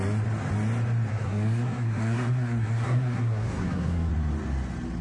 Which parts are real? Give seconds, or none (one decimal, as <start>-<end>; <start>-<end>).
0.0-1.1; 4.1-5.0